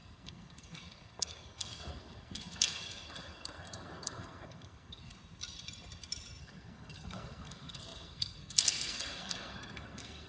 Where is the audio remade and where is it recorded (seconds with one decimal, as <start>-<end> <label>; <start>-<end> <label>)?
0.0-5.1 remade; 5.1-6.4 recorded; 6.4-10.3 remade